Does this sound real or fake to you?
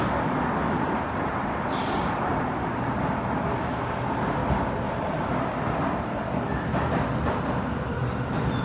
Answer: real